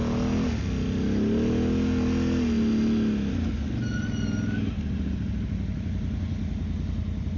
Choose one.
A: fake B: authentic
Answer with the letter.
B